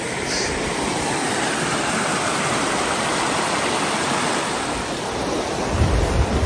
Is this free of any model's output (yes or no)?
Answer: yes